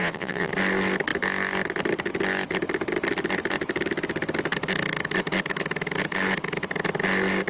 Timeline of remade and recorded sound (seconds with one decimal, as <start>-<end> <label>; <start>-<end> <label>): 0.0-0.5 remade; 0.5-7.5 recorded